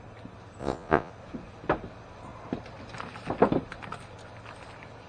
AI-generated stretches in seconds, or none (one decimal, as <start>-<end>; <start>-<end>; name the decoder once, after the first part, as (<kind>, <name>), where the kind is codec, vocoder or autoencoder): 0.6-1.1 (vocoder, Vocos)